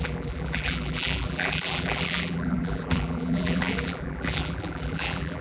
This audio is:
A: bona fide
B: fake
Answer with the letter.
B